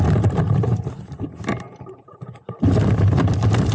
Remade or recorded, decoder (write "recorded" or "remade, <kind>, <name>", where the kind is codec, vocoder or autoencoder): recorded